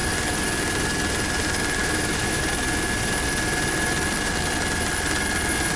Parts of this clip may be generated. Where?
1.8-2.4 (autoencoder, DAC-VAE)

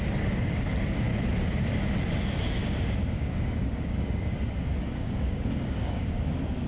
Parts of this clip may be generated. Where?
0.0-1.1 (codec, DAC); 2.4-6.7

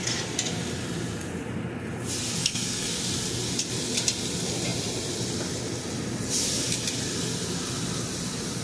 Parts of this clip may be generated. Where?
2.4-3.0 (codec, SNAC)

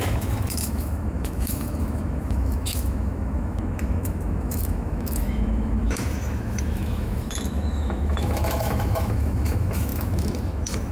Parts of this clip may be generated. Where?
0.0-10.9 (autoencoder, DAC-VAE)

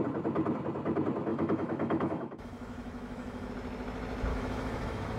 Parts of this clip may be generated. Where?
1.3-3.5 (autoencoder, DAC-VAE); 4.3-5.2